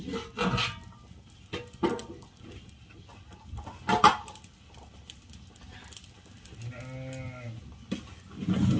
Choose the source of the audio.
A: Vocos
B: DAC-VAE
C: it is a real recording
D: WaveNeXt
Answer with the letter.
C